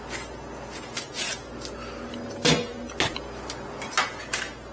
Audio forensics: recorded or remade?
recorded